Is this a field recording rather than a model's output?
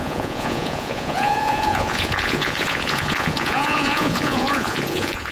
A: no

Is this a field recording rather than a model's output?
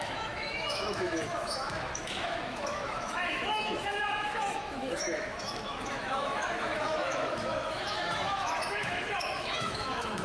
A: no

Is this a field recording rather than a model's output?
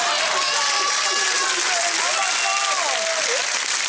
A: yes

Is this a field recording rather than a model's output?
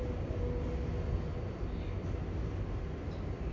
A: yes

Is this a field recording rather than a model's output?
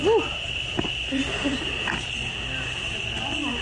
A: yes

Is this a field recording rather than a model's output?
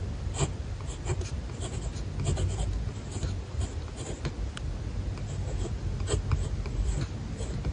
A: yes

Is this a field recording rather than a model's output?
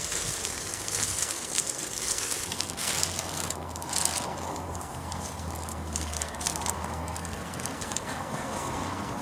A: no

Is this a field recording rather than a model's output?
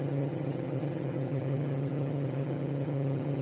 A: no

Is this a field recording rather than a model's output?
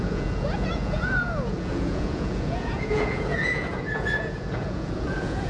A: no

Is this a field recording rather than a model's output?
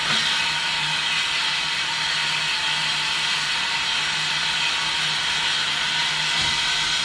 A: yes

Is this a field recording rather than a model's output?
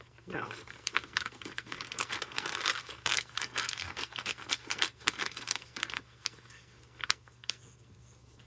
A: no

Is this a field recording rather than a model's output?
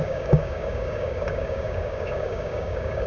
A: no